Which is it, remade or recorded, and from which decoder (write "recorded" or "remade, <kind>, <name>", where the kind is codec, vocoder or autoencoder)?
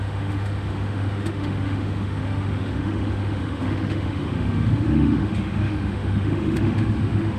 remade, autoencoder, DAC-VAE